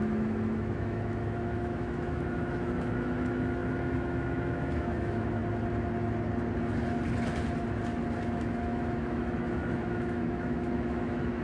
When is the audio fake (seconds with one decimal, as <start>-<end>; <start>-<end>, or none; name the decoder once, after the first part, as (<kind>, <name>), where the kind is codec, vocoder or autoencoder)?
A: 0.0-5.4 (autoencoder, DAC-VAE); 8.2-11.4